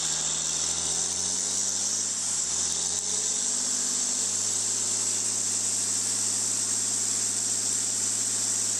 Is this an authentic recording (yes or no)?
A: yes